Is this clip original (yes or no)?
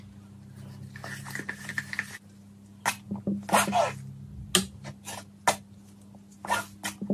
yes